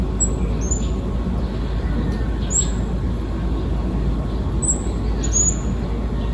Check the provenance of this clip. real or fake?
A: real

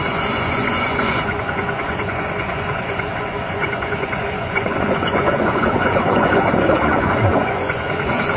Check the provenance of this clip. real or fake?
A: fake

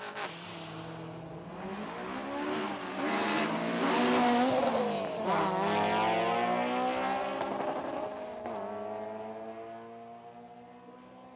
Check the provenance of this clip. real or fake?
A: real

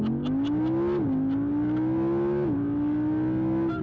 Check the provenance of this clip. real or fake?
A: real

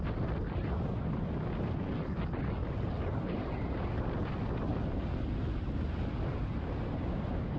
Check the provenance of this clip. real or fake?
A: real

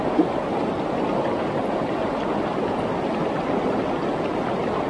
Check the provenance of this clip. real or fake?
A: real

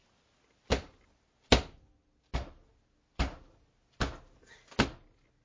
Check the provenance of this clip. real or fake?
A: real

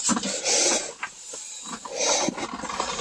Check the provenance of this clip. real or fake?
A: real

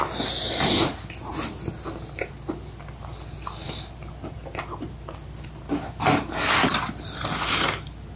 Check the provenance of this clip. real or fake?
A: real